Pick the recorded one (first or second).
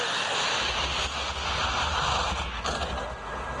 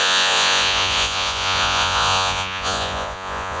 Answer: first